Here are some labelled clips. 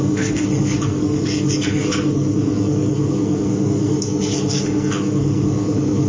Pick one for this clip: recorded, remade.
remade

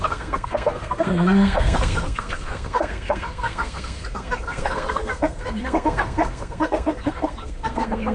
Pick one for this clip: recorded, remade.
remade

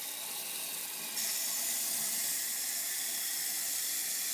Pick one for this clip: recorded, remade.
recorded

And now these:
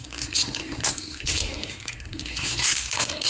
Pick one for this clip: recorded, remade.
remade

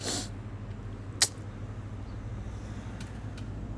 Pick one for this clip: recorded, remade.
recorded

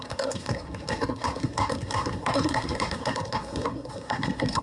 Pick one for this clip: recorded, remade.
remade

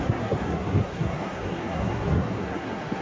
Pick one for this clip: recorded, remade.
remade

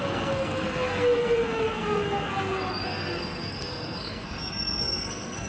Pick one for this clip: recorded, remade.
remade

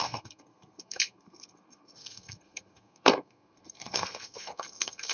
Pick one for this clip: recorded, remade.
remade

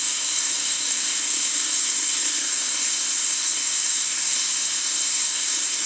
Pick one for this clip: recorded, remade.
remade